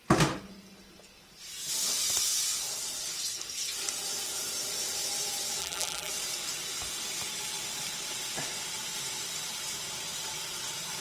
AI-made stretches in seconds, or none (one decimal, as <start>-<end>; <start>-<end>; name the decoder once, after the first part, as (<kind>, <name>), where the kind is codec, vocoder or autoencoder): 5.6-6.1 (vocoder, BigVGAN v2)